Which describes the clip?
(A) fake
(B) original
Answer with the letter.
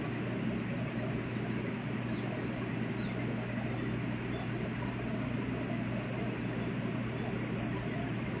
B